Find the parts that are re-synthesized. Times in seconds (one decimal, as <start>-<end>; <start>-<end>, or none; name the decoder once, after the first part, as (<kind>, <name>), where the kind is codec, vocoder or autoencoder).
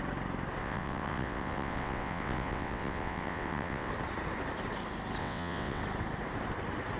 0.6-3.9 (vocoder, WaveNeXt); 5.2-5.8